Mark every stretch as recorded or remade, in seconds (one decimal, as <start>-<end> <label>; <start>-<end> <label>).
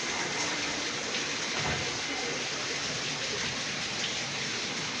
0.0-5.0 recorded